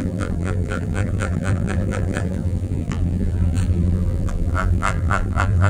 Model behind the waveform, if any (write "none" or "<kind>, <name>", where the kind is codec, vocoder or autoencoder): vocoder, BigVGAN v2